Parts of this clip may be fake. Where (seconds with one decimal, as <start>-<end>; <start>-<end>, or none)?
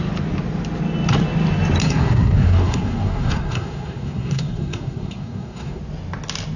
1.8-5.8